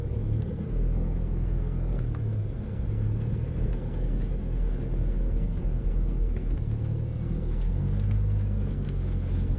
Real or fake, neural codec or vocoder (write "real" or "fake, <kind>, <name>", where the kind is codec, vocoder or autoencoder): fake, codec, SNAC